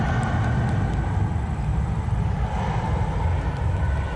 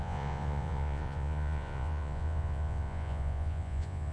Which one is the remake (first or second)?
second